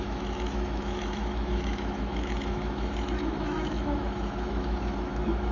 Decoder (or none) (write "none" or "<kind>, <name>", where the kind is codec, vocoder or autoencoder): autoencoder, DAC-VAE